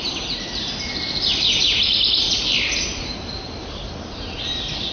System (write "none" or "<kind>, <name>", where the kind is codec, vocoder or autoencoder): none